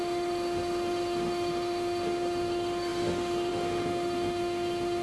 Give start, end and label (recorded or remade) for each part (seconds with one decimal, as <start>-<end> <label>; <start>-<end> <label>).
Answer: 0.0-5.0 remade